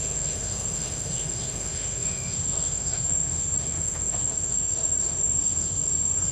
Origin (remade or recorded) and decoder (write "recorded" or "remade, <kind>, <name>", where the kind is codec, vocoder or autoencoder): remade, autoencoder, DAC-VAE